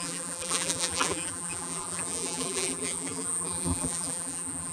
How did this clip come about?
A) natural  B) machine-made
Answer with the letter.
B